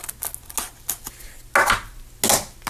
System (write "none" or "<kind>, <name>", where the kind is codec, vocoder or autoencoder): none